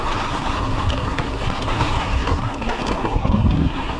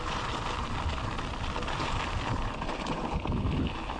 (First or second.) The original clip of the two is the second